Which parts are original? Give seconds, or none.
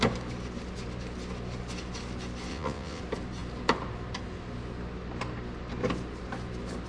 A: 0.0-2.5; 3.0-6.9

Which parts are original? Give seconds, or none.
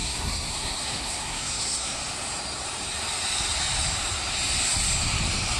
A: 2.0-5.6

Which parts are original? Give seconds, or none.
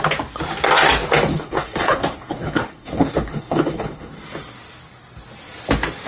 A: 0.0-1.3; 4.1-6.1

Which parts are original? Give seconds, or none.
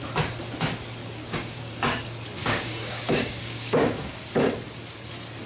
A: 0.0-1.0; 1.7-2.4; 4.2-5.5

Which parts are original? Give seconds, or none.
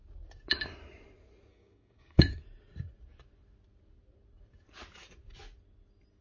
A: 0.0-1.5; 2.4-6.2